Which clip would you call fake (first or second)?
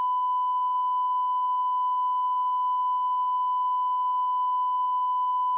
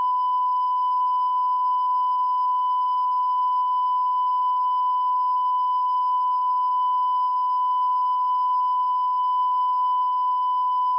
second